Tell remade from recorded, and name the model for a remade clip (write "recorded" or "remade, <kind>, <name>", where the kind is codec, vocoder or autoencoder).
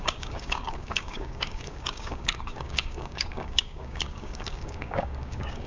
remade, codec, DAC